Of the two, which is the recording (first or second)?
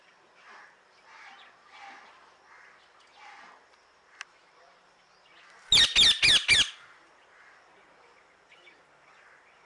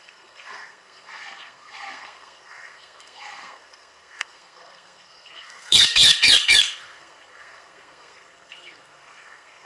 first